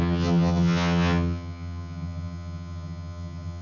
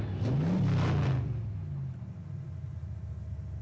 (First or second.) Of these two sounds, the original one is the second